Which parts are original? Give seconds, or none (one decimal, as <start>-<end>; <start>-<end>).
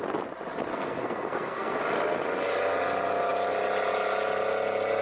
0.0-0.7; 1.8-5.0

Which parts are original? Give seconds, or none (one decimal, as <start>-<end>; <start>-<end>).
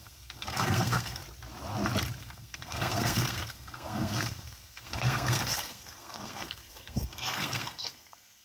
1.2-2.2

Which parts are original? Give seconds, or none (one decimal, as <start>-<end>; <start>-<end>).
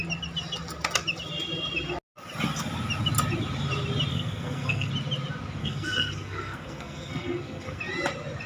0.0-4.1; 4.9-5.6; 7.8-8.5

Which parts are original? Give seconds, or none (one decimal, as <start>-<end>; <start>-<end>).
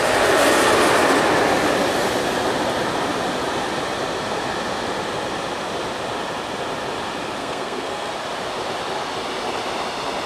0.0-7.4; 8.1-10.3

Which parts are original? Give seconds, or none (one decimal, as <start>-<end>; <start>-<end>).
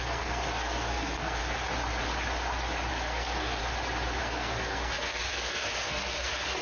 1.4-2.9; 3.6-4.2